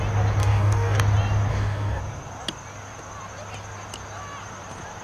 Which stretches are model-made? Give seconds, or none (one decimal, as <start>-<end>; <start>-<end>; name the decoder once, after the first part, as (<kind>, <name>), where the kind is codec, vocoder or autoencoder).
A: 0.4-1.0 (codec, DAC); 1.5-2.0